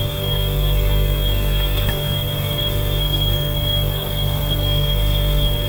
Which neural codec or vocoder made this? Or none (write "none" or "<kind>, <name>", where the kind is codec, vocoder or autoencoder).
codec, SNAC